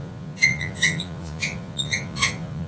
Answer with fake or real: fake